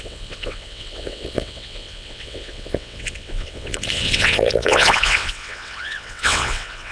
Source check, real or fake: fake